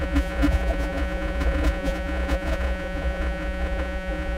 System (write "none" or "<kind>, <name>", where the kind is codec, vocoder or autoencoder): vocoder, Vocos